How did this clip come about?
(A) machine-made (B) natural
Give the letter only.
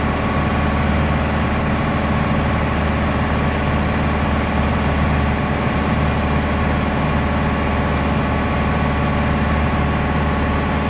B